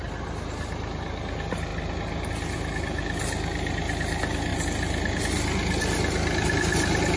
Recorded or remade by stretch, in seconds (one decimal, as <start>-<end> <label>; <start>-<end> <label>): 0.0-7.2 recorded